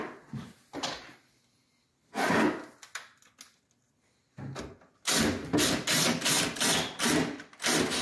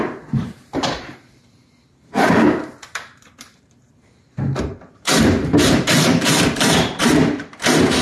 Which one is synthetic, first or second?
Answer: second